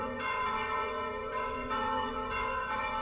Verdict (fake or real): fake